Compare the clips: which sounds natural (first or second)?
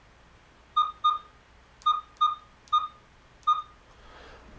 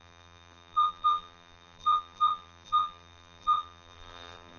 first